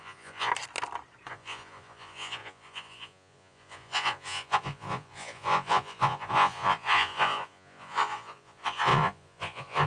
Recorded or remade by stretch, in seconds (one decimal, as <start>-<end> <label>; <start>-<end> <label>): 0.0-0.5 remade; 0.5-1.3 recorded; 1.3-9.9 remade